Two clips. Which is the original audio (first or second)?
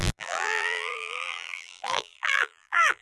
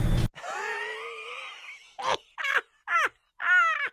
second